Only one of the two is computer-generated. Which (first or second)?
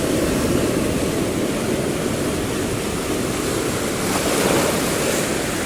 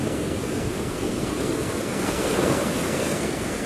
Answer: second